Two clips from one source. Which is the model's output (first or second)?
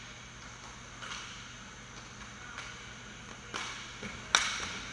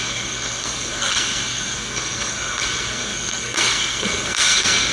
second